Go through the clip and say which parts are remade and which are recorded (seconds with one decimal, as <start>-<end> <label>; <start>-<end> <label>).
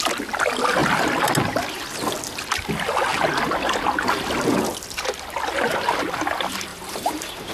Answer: 0.0-6.7 recorded; 6.7-7.5 remade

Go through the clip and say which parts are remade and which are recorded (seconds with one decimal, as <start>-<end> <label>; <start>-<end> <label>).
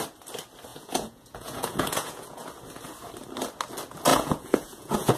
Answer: 0.0-0.7 recorded; 0.7-2.5 remade; 2.5-4.1 recorded; 4.1-5.2 remade